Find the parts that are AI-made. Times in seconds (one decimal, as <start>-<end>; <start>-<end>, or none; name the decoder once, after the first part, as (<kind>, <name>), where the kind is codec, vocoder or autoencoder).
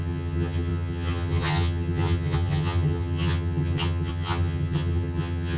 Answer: 0.0-5.6 (vocoder, HiFi-GAN)